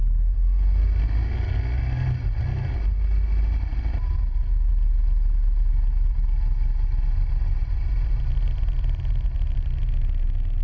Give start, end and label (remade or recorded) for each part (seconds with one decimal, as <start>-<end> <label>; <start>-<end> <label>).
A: 0.0-10.6 recorded